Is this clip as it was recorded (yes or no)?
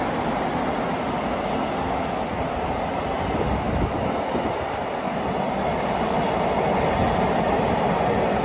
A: yes